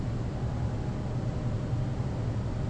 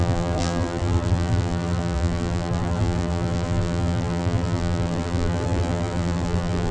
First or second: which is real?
first